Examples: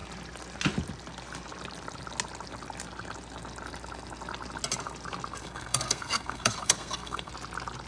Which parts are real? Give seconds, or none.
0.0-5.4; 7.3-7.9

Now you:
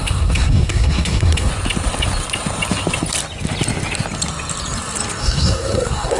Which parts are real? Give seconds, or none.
1.5-5.2